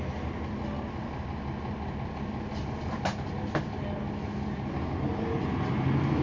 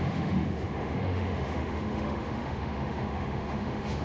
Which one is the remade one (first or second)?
second